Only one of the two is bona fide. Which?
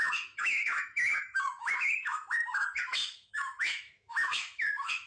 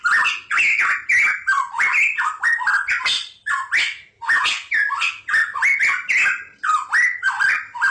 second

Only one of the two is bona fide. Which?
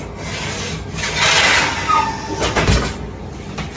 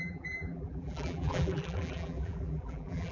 first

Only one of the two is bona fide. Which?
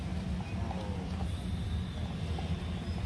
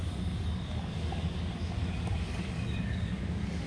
first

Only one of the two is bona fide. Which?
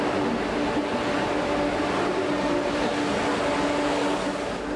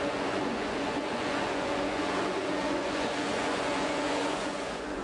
first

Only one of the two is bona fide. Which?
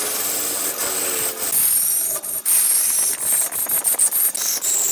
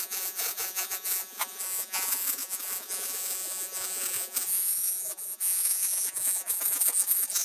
first